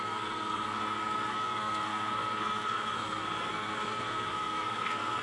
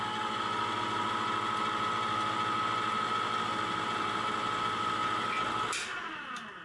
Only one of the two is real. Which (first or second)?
second